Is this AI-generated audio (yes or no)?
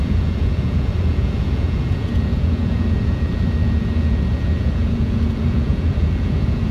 yes